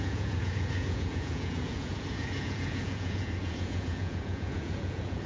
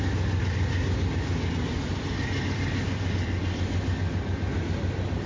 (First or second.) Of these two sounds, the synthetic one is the first